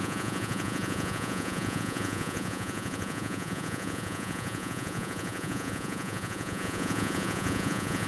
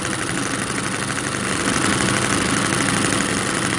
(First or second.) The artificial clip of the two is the first